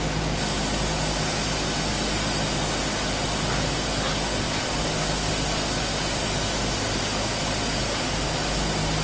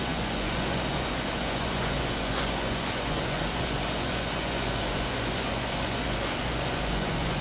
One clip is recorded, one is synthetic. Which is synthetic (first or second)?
second